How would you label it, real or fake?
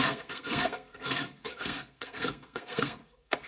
fake